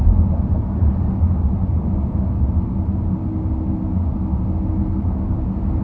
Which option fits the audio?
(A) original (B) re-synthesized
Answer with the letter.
A